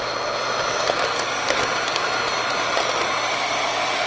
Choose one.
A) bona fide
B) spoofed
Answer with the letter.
A